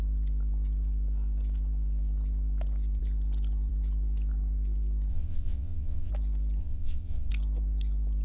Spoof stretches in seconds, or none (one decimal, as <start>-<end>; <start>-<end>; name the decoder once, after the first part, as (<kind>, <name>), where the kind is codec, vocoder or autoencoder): 5.1-6.1 (vocoder, WaveNeXt); 6.6-7.3